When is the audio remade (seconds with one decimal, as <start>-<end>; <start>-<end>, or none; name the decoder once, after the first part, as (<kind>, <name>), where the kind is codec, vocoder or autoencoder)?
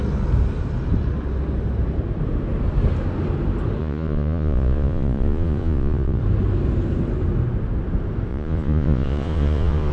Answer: 3.8-6.2 (vocoder, Vocos); 8.3-9.9